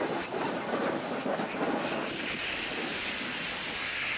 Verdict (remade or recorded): recorded